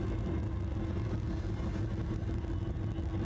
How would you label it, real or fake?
real